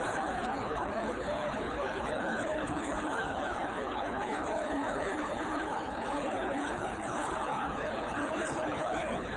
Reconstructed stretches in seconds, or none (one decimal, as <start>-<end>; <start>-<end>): 0.0-9.4